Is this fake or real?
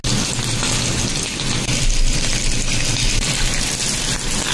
real